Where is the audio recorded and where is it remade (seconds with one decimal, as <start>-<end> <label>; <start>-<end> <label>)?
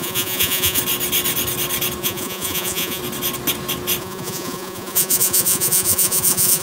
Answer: 0.0-0.8 remade; 0.8-2.0 recorded; 2.0-3.0 remade; 3.0-4.0 recorded; 4.0-6.6 remade